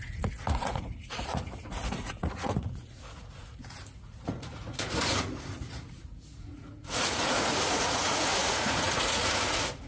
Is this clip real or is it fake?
fake